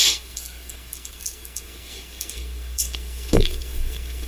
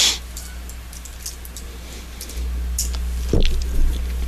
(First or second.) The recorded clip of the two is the second